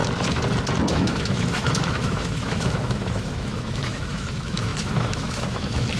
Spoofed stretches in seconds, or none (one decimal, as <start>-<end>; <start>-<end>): 0.9-6.0